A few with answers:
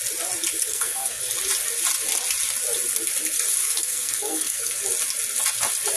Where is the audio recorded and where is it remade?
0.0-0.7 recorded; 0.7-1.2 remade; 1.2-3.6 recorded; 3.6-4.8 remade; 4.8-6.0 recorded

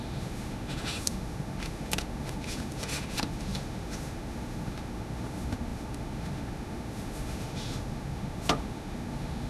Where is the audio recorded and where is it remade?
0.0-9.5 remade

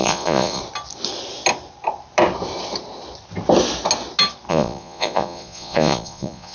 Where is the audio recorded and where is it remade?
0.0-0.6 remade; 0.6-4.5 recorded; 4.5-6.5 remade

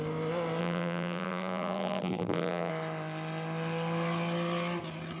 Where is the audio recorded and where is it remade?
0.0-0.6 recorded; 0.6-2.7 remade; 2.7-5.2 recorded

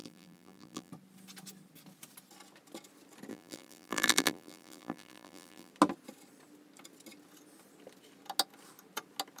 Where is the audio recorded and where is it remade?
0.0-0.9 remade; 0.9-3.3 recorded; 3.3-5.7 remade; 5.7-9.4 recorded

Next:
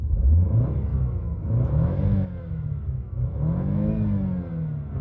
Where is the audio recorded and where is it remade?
0.0-0.9 recorded; 0.9-3.9 remade; 3.9-5.0 recorded

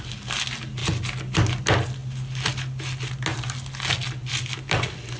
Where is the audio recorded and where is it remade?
0.0-5.2 recorded